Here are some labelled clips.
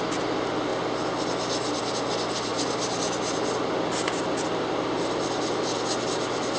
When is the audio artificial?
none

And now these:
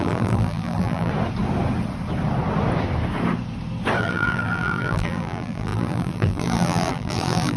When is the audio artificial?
0.0-1.1 (vocoder, BigVGAN v2); 4.0-7.6

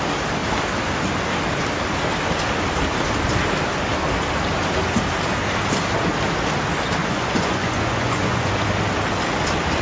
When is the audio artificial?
7.0-8.5 (vocoder, Vocos)

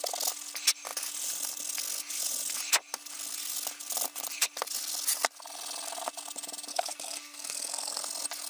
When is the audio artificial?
6.7-8.0 (codec, SNAC)

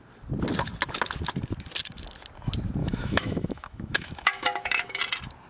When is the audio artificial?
2.8-5.0 (autoencoder, DAC-VAE)